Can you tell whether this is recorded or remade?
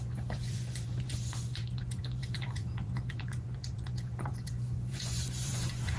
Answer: remade